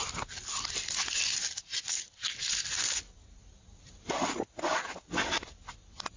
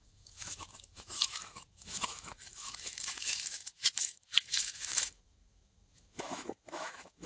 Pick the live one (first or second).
first